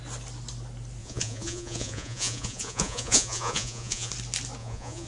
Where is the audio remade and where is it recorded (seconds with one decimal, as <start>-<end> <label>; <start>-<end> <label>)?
0.0-1.0 recorded; 1.0-4.1 remade; 4.1-4.6 recorded; 4.6-5.1 remade